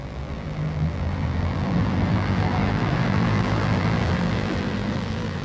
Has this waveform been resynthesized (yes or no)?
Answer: yes